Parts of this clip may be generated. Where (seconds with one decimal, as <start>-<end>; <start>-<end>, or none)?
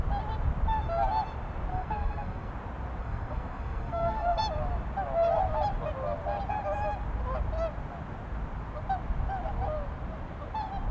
1.7-2.5; 3.0-4.4